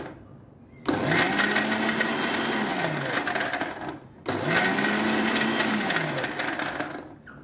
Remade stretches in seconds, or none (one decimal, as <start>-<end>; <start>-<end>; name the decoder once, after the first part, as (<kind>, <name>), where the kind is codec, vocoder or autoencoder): none